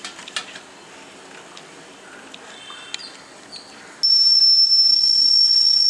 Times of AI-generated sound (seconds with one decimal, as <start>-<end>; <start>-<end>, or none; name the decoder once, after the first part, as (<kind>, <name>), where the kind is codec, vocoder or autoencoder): 4.9-5.9 (codec, HILCodec)